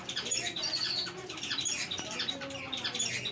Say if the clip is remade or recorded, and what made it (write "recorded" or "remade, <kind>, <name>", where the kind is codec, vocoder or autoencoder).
recorded